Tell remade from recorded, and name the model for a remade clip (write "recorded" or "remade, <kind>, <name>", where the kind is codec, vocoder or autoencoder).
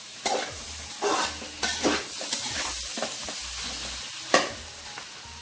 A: recorded